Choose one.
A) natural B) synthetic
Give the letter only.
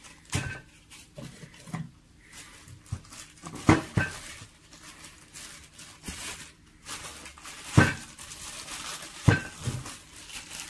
A